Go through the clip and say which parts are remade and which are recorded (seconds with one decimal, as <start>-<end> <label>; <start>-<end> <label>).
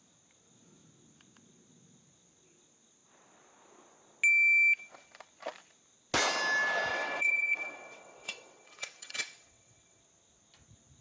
0.0-6.9 recorded; 6.9-10.0 remade; 10.0-11.0 recorded